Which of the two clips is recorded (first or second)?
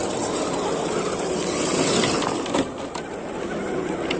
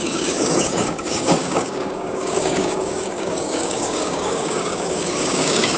first